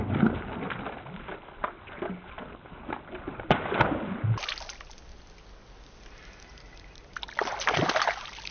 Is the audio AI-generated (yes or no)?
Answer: no